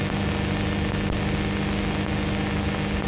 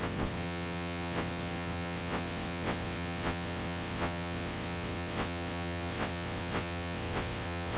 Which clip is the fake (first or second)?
second